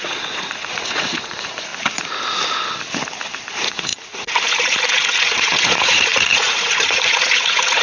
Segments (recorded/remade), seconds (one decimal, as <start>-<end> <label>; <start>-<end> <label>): 0.0-1.7 remade; 1.7-3.5 recorded; 3.5-7.8 remade